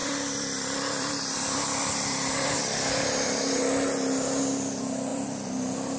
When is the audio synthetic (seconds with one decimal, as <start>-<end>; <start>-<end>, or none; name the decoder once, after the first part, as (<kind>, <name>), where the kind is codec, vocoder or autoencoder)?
0.0-3.6 (vocoder, BigVGAN v2); 5.1-6.0